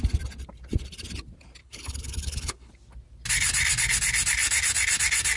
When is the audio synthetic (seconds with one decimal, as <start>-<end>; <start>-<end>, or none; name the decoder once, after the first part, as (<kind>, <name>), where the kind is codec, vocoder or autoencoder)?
1.6-2.7 (codec, HILCodec)

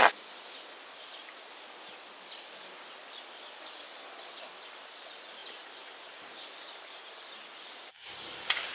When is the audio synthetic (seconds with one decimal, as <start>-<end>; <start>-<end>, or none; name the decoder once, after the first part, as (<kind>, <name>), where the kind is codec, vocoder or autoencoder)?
none

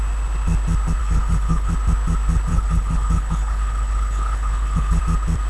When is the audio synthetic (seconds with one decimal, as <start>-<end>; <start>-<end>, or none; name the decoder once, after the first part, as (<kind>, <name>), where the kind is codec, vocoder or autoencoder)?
1.0-1.7 (codec, HILCodec); 2.5-5.0

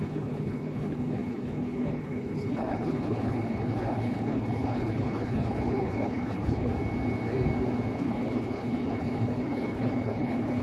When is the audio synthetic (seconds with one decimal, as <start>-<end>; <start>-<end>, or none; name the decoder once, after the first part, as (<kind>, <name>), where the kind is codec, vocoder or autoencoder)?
0.0-6.7 (codec, HILCodec); 8.0-10.6

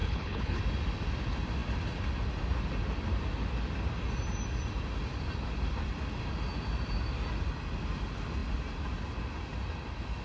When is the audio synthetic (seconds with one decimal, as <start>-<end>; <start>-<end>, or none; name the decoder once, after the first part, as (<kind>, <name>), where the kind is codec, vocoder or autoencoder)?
0.0-0.6 (codec, HILCodec)

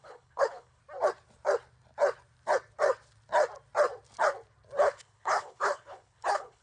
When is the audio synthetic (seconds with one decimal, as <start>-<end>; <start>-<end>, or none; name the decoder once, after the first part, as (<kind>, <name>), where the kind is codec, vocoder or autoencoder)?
0.0-0.8 (codec, HILCodec); 4.8-6.6

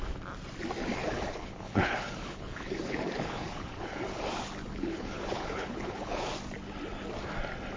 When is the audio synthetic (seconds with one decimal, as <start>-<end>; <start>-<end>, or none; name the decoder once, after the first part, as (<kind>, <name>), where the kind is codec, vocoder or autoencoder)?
1.0-4.2 (codec, HILCodec); 4.7-6.3

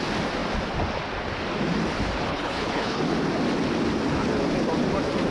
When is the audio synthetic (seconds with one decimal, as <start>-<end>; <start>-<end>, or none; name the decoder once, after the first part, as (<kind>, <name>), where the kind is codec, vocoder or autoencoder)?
2.3-3.0 (codec, HILCodec)